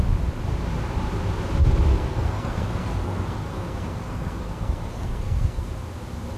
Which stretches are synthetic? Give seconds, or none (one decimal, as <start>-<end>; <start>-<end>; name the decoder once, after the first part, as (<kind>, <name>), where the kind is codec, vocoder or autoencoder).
1.9-5.7 (codec, SNAC)